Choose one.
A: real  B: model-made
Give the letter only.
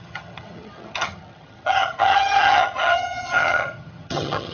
B